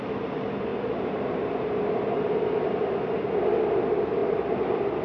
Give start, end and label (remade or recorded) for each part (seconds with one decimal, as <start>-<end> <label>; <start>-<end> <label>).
0.0-5.0 recorded